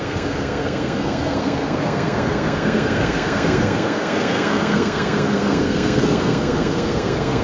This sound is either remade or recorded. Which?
remade